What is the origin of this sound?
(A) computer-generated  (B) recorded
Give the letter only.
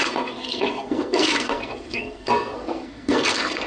A